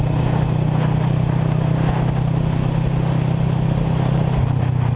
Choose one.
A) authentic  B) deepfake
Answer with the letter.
A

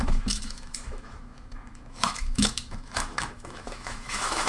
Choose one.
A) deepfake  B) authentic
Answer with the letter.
A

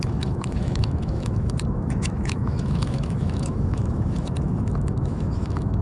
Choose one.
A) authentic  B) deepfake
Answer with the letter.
B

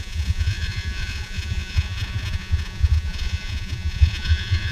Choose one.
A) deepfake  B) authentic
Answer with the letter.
A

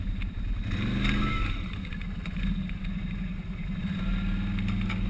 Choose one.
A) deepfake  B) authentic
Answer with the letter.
B